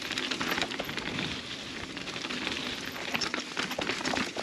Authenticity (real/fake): real